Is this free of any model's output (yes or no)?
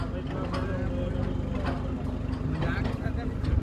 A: yes